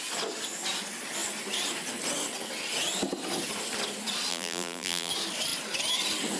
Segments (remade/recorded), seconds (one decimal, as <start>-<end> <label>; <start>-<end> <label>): 0.0-4.3 recorded; 4.3-5.1 remade; 5.1-6.4 recorded